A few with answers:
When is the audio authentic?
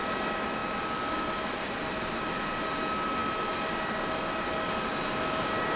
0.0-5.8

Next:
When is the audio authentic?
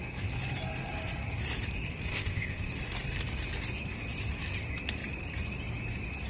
0.0-2.1; 2.7-6.3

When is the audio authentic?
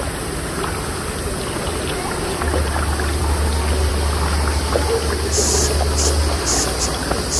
0.0-7.4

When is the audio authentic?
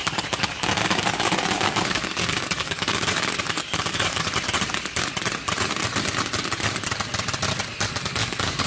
4.3-8.2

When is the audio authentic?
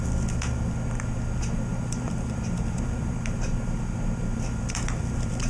0.0-5.5